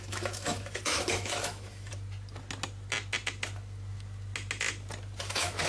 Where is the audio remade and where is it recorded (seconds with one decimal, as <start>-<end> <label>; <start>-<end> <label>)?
0.0-1.9 remade; 1.9-5.2 recorded; 5.2-5.7 remade